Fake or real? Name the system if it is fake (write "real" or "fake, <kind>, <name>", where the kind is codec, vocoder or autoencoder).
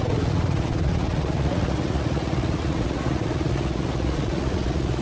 fake, vocoder, Vocos